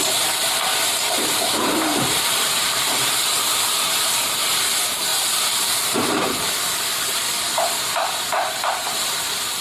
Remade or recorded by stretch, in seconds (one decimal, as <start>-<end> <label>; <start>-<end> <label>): 0.0-9.6 remade